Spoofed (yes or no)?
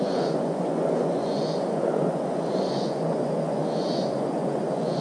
yes